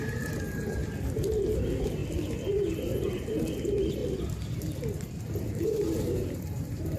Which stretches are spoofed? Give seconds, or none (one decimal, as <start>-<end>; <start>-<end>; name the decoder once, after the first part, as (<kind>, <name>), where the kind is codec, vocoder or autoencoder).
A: 0.0-0.8 (vocoder, BigVGAN v2); 1.6-2.0; 3.2-4.0; 4.9-7.0